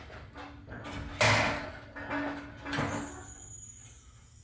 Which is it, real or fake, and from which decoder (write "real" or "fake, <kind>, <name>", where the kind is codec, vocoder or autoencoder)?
real